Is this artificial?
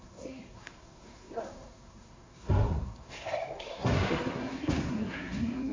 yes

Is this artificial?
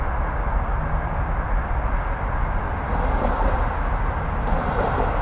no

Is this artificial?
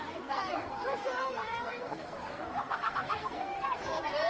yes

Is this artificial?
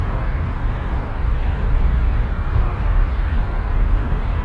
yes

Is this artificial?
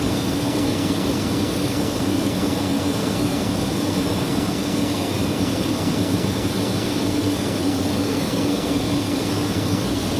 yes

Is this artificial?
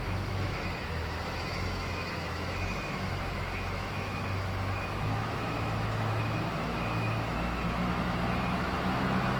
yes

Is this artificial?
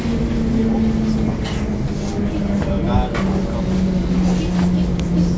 no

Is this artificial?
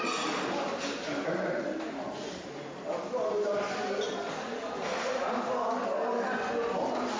no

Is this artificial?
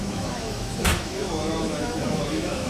yes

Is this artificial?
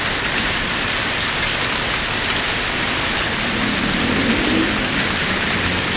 no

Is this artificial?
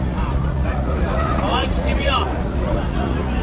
yes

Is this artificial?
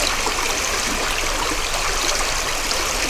no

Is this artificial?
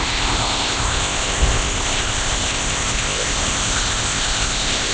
yes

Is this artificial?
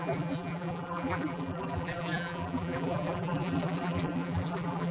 yes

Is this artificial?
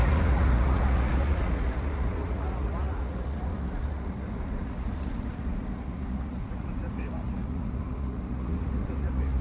yes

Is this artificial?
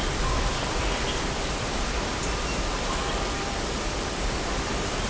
no